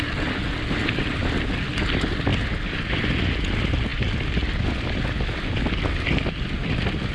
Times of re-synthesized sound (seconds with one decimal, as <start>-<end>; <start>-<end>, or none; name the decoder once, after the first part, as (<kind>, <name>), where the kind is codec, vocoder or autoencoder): none